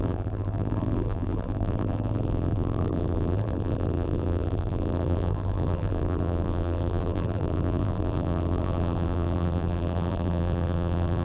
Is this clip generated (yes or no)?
yes